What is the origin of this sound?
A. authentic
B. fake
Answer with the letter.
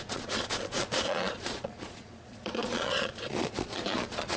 B